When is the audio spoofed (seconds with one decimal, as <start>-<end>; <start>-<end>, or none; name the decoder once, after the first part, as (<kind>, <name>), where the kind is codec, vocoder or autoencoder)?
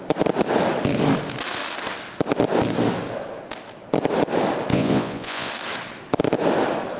4.7-5.5 (vocoder, Vocos)